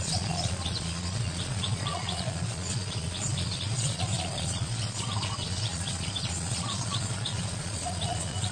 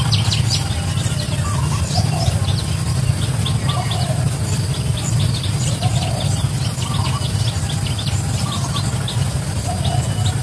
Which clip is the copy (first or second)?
first